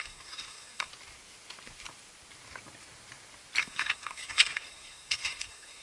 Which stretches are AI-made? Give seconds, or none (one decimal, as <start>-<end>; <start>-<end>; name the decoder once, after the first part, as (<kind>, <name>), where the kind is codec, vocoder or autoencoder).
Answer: 0.0-0.9 (codec, SNAC); 3.6-5.8